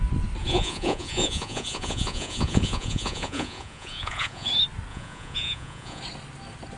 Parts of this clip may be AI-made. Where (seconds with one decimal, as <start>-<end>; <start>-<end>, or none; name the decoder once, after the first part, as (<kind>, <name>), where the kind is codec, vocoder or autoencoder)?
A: 0.4-4.5 (vocoder, Vocos); 4.9-6.0